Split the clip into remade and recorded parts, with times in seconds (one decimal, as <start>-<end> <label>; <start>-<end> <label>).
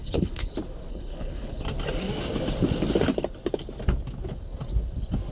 0.0-0.5 remade; 0.5-0.9 recorded; 0.9-1.6 remade; 1.6-5.3 recorded